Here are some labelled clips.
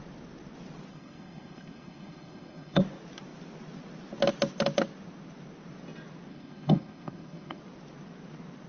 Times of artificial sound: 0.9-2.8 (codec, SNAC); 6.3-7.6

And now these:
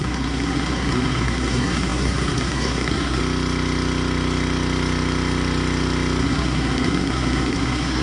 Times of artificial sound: 0.0-3.2 (codec, SNAC); 6.2-8.0

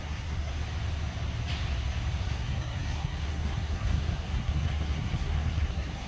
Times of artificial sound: 0.0-0.5 (codec, SNAC); 2.2-6.1

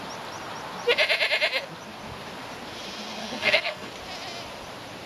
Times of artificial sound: 3.2-3.9 (codec, SNAC)

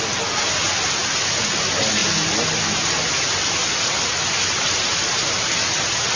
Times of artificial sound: none